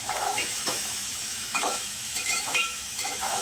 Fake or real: fake